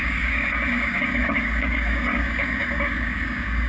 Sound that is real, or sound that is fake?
fake